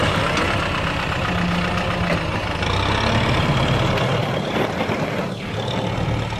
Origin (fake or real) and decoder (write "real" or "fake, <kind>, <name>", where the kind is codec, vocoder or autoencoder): real